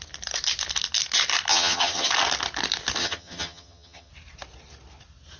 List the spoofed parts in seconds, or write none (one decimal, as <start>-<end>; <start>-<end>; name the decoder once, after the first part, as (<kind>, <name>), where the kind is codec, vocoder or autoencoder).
1.5-2.1 (vocoder, HiFi-GAN); 3.0-4.1

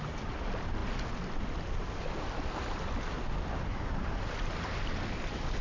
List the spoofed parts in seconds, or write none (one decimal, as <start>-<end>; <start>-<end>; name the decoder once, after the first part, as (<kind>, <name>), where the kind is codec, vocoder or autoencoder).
none